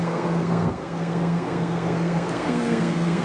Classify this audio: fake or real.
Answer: fake